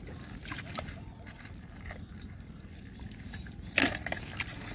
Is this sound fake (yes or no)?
no